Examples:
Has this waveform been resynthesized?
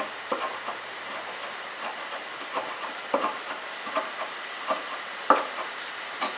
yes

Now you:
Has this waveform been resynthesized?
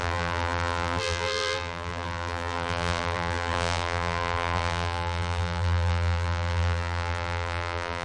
yes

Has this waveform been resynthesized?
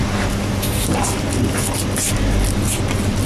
no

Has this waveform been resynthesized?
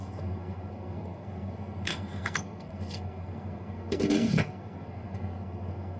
yes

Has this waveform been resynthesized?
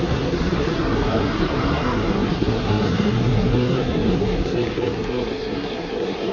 yes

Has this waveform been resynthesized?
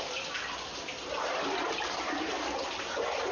no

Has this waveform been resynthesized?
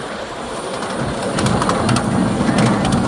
no